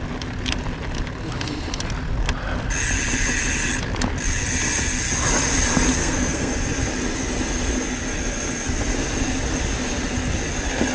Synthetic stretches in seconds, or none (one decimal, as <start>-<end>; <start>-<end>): 6.0-6.5